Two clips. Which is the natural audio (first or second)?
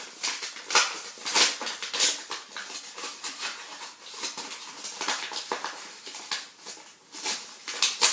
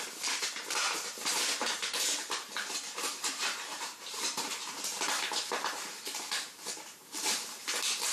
first